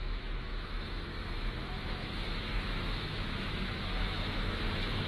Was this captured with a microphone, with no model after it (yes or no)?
no